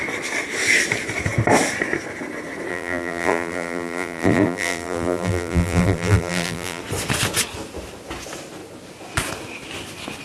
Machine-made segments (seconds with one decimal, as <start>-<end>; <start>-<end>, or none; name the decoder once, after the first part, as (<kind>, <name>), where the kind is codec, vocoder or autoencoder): 2.7-6.8 (vocoder, BigVGAN v2)